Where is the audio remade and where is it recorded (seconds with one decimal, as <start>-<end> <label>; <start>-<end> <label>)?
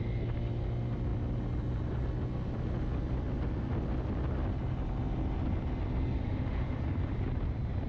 0.0-6.2 recorded; 6.2-6.8 remade; 6.8-7.9 recorded